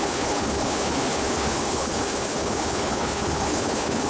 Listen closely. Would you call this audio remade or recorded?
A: remade